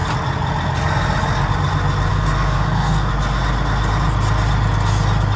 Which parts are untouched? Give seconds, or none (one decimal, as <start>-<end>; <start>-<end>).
0.0-2.1; 3.1-5.4